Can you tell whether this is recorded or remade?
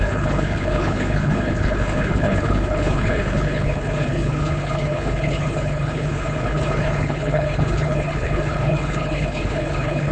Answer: remade